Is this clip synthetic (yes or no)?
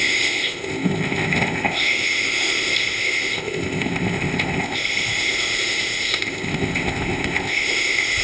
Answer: yes